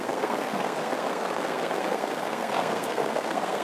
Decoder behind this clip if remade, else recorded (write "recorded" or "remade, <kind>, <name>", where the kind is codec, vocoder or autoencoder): remade, codec, SNAC